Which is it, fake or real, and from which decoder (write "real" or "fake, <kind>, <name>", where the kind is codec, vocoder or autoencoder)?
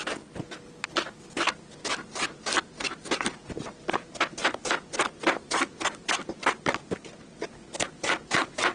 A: real